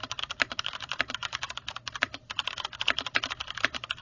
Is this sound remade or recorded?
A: remade